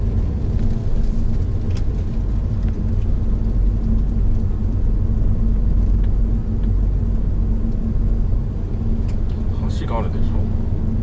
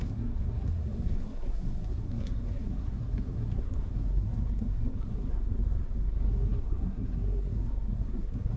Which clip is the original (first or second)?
first